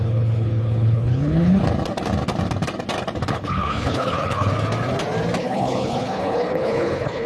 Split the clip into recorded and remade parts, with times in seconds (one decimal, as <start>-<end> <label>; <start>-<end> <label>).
0.0-1.6 remade; 1.6-3.3 recorded; 3.3-4.5 remade; 4.5-5.4 recorded; 5.4-7.3 remade